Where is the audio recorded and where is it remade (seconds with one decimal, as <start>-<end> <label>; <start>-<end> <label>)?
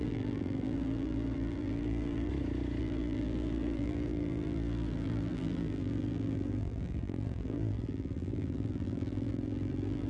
0.0-2.3 remade; 2.3-2.8 recorded; 2.8-10.1 remade